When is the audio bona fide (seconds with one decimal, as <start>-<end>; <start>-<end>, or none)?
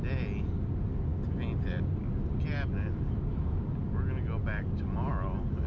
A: 0.0-5.7